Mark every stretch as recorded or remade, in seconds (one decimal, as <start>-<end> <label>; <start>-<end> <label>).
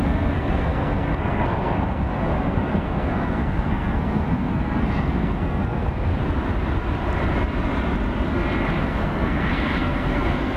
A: 0.0-6.1 remade; 6.1-8.8 recorded; 8.8-10.6 remade